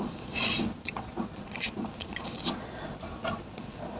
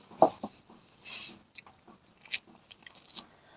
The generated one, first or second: first